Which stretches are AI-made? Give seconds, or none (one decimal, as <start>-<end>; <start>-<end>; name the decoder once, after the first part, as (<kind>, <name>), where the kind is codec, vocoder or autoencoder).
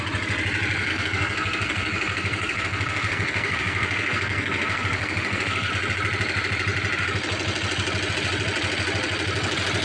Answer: 0.9-5.7 (codec, SNAC)